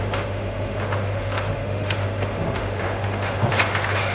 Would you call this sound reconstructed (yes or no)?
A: yes